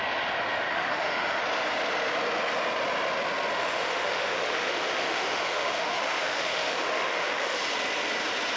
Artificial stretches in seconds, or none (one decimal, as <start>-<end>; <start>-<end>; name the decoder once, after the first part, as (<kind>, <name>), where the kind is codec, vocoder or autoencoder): 0.7-1.4 (autoencoder, DAC-VAE); 3.6-7.6